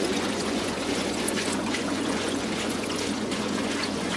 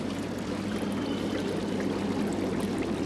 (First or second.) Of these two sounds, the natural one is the second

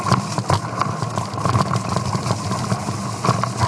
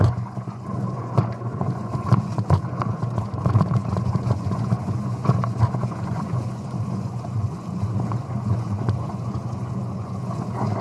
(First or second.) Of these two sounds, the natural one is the first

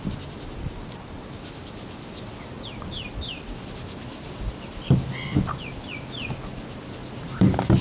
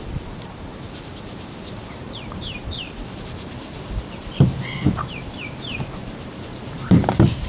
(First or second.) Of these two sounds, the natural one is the first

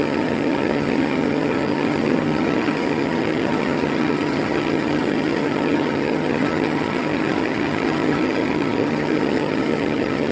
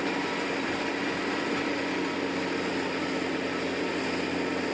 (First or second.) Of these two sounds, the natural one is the second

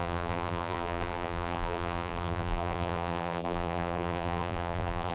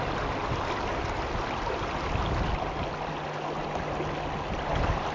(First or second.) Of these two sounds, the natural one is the second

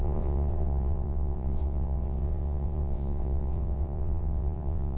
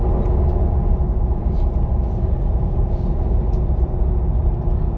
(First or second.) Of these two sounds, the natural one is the second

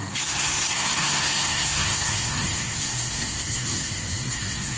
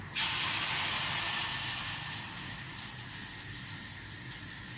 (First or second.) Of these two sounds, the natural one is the second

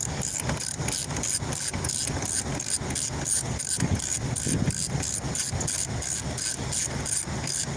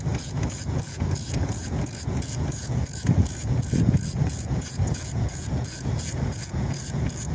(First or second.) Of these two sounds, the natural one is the first